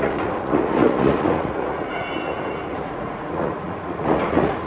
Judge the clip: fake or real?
fake